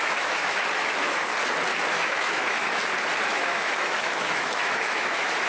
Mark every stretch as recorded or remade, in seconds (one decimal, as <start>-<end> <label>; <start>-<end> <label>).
0.0-1.3 remade; 1.3-1.9 recorded; 1.9-2.8 remade; 2.8-3.3 recorded; 3.3-5.5 remade